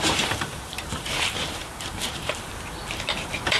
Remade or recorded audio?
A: remade